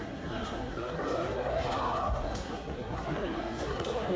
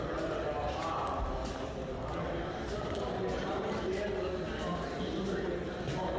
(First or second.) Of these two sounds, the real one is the second